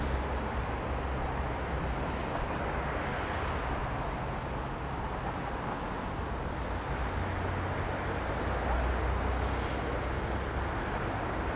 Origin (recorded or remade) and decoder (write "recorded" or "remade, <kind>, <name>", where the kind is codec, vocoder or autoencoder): recorded